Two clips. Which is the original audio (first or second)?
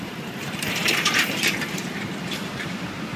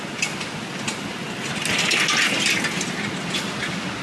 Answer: second